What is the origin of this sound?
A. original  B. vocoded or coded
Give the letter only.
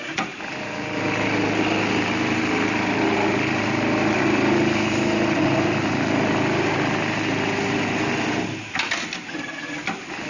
A